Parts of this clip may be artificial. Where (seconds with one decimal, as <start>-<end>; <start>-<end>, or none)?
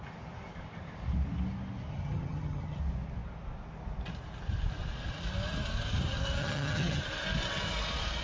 1.9-2.8; 6.4-7.0